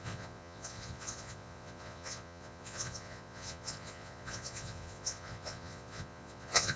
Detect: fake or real fake